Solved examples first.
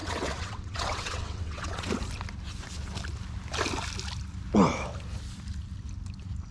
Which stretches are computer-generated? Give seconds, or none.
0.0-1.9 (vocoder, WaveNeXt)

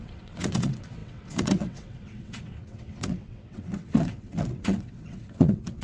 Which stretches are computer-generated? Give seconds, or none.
0.0-5.8 (vocoder, WaveNeXt)

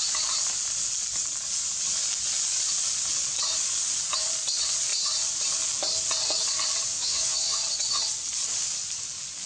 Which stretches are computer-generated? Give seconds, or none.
6.9-7.6 (vocoder, WaveNeXt)

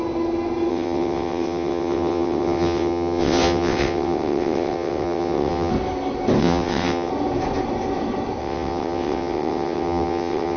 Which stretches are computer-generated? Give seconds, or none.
0.7-5.7 (vocoder, WaveNeXt); 6.4-7.1; 8.4-10.6

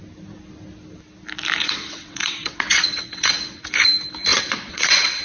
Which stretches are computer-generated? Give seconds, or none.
1.6-3.6 (vocoder, WaveNeXt); 4.3-5.2

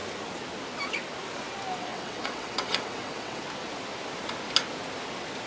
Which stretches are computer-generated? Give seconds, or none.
1.9-3.4 (vocoder, WaveNeXt)

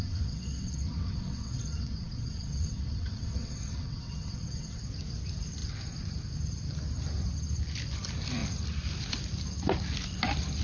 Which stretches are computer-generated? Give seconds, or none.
0.0-4.8 (vocoder, WaveNeXt)

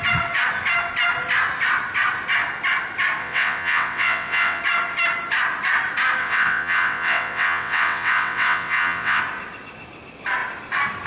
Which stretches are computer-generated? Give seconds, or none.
3.2-4.6 (vocoder, WaveNeXt); 6.2-9.2